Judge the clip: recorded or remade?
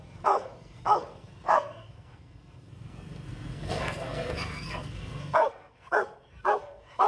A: remade